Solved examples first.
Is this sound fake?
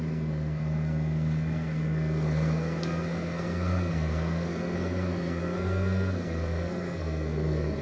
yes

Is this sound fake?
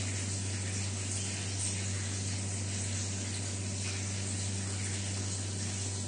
no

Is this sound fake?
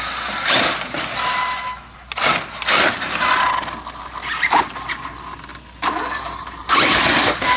no